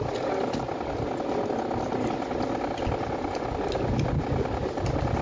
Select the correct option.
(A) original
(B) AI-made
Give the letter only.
A